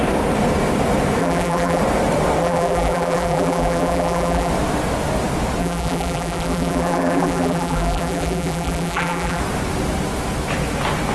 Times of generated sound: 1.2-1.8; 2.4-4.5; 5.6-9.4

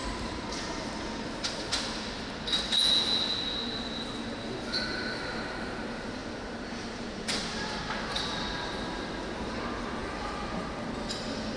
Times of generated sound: 0.0-1.6; 6.2-9.0

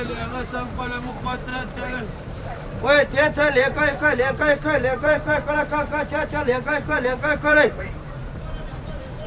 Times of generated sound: 0.0-8.2; 8.7-9.3

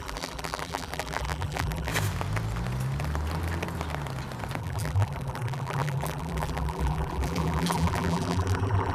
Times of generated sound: 0.0-1.9; 4.6-8.9

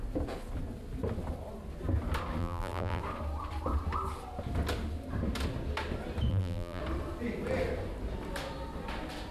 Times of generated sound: 2.4-3.0; 6.3-6.8